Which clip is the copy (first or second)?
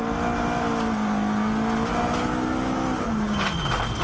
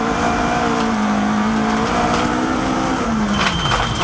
second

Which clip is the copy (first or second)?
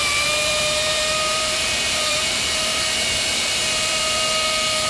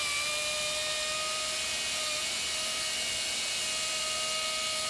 first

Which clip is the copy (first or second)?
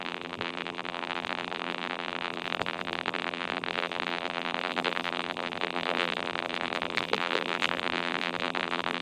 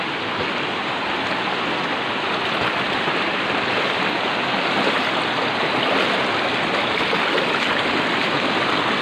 first